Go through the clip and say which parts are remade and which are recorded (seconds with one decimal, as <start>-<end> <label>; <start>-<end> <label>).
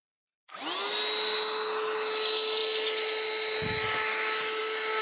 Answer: 0.0-5.0 recorded